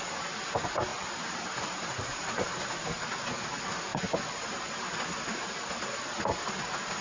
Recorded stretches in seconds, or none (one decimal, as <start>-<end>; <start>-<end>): 0.0-0.9; 2.7-3.9; 4.8-7.0